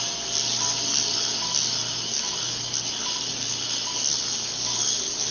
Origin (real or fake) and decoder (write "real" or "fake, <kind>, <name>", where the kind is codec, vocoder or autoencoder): real